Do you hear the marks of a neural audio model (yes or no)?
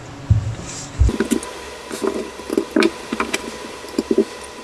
no